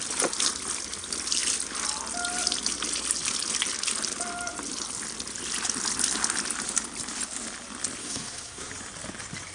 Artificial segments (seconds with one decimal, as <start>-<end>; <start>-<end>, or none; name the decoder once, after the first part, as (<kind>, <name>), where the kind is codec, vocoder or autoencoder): 8.0-8.7 (codec, SNAC)